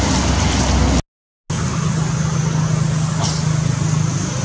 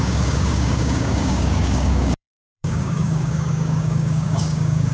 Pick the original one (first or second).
first